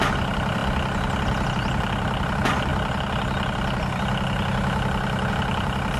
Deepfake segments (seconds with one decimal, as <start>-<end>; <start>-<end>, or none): 0.0-0.6; 1.5-2.7; 5.3-6.0